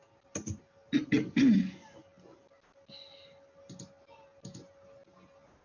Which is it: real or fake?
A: real